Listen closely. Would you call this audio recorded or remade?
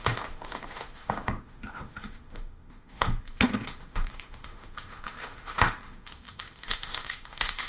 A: remade